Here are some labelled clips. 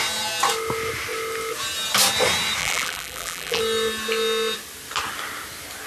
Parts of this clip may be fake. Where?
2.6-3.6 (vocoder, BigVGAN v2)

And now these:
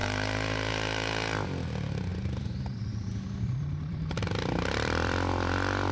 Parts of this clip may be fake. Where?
0.0-0.7 (vocoder, BigVGAN v2); 2.1-5.9